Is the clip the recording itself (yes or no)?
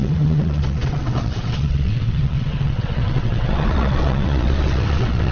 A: no